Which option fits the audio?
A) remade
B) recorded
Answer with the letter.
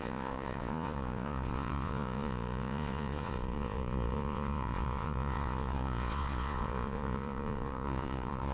A